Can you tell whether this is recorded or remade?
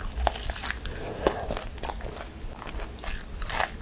recorded